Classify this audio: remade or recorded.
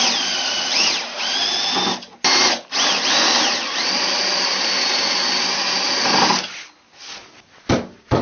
recorded